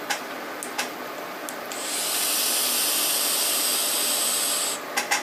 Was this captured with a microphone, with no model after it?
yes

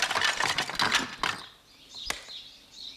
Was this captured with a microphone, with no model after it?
yes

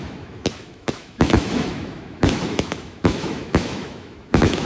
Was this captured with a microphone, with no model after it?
no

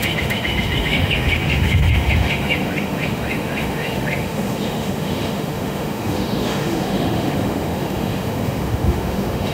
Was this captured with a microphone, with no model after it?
no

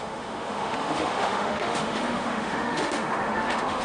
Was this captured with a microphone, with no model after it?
no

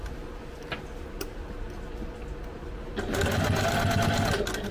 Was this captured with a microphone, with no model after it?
yes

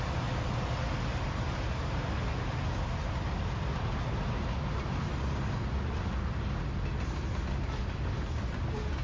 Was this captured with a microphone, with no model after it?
yes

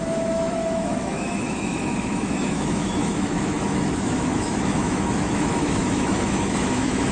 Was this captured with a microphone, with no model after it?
no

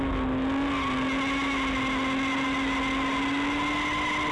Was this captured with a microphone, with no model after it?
yes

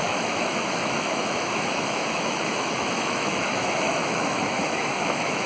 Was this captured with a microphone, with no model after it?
no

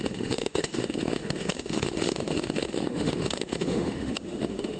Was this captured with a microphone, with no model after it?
no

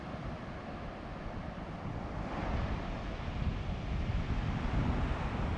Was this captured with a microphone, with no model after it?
yes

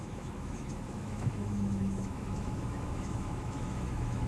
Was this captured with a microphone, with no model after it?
no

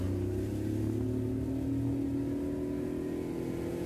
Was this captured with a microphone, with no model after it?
yes